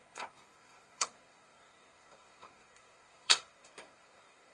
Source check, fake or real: fake